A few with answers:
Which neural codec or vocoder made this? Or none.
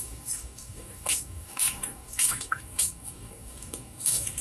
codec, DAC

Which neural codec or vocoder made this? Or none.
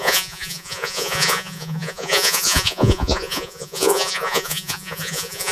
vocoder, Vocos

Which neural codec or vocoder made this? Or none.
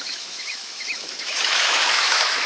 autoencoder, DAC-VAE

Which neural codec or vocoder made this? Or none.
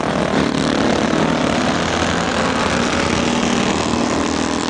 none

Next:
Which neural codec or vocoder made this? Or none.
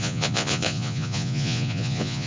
vocoder, Vocos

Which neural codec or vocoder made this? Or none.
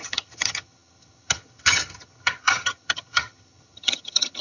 vocoder, HiFi-GAN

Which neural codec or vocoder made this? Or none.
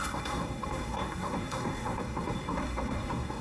codec, SNAC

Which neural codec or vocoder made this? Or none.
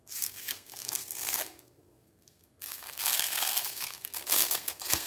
codec, SNAC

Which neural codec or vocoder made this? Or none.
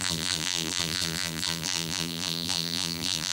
vocoder, BigVGAN v2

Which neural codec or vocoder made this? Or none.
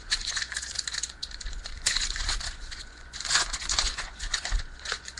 vocoder, Vocos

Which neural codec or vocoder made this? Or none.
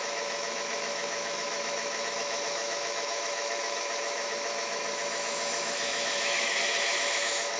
autoencoder, DAC-VAE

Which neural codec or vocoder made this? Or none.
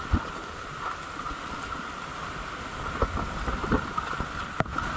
none